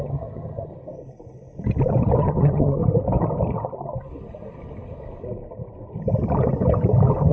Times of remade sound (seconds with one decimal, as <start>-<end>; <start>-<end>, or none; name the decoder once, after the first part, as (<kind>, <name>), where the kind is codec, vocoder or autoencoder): 0.0-0.7 (vocoder, HiFi-GAN); 2.2-2.8